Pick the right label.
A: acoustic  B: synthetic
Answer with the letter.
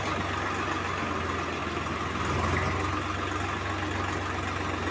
A